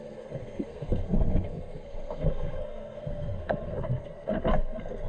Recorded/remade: remade